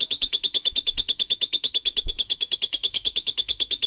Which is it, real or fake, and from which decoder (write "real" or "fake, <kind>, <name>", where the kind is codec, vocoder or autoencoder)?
fake, autoencoder, DAC-VAE